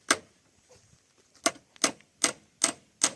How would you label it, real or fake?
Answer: real